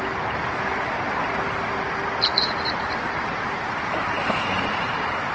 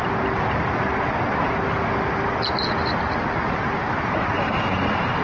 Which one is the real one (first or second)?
second